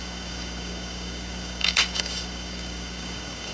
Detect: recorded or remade remade